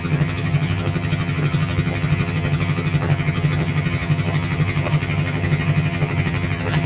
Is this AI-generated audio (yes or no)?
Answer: yes